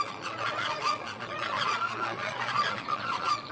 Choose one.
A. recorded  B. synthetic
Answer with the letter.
B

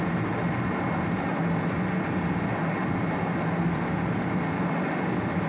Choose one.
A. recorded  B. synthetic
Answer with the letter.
A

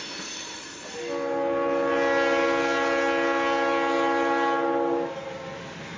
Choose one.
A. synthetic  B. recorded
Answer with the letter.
B